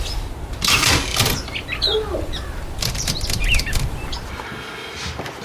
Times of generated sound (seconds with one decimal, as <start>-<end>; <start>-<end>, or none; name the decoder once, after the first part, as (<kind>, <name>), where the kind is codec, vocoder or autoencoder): 1.1-4.3 (vocoder, BigVGAN v2)